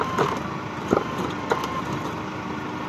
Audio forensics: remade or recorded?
recorded